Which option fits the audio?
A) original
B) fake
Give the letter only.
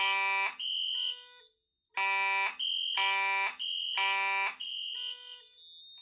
A